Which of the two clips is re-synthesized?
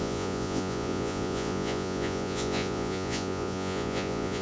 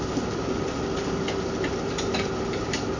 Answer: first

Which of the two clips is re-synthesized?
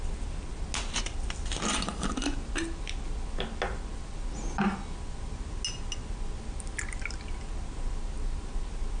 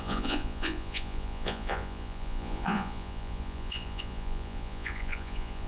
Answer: second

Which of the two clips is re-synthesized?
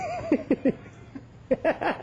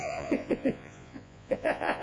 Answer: second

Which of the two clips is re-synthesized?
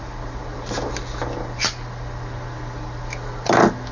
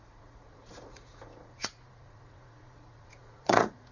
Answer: second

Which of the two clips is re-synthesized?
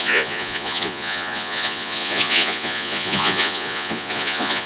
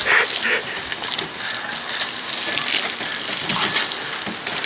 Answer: first